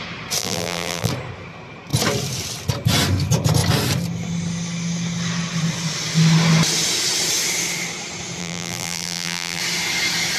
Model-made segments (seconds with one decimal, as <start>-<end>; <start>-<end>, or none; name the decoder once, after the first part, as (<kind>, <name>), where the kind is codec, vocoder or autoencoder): 0.4-1.1 (vocoder, BigVGAN v2); 8.4-9.6